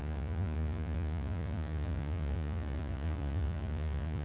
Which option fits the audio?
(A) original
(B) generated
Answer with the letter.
B